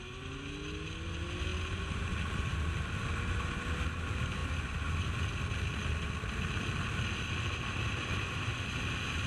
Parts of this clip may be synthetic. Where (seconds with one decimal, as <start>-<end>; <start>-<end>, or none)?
none